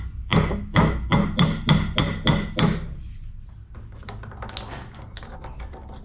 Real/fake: real